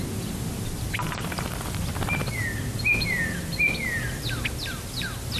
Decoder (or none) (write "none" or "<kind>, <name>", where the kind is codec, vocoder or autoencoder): none